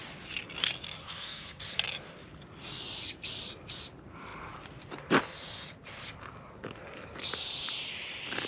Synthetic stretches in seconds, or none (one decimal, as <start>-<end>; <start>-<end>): 1.0-1.6